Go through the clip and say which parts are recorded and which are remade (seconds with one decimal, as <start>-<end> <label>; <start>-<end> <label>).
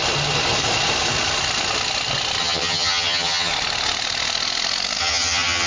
0.0-2.4 recorded; 2.4-3.5 remade; 3.5-5.0 recorded; 5.0-5.7 remade